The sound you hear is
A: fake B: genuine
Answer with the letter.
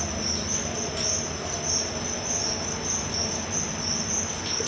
B